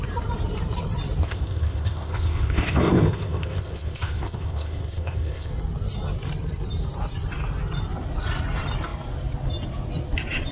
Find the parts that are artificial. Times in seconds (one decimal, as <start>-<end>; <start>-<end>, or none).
1.2-5.5